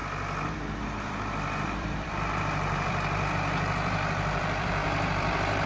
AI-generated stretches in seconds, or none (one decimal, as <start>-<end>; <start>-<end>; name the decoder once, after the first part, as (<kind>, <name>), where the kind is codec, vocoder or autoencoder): 0.8-5.7 (vocoder, BigVGAN v2)